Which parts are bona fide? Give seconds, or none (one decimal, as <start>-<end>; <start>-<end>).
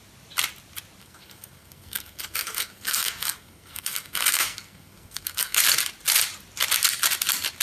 0.0-1.0; 5.6-7.6